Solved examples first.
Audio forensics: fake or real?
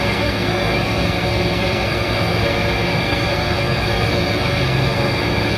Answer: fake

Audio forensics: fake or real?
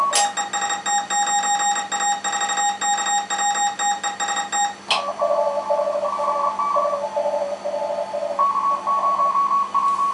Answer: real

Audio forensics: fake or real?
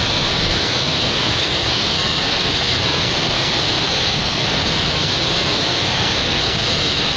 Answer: fake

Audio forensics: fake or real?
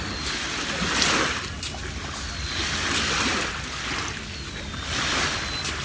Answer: real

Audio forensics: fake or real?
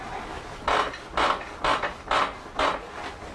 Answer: real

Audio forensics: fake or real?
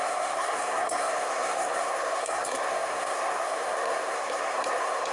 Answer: fake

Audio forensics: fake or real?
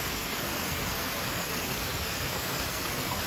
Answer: fake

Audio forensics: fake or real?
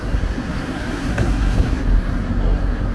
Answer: fake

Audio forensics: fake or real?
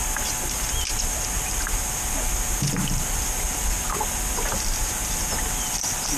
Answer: real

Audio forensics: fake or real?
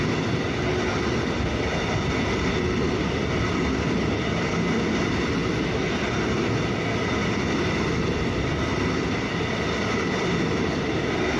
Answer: real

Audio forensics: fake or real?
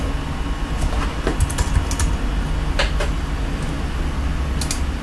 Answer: real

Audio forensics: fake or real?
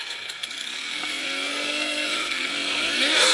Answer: fake